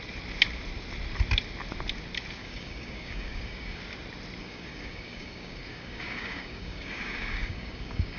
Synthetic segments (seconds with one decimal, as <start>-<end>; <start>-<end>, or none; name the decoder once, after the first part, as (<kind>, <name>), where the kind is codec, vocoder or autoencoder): 2.4-3.8 (codec, DAC); 4.4-8.2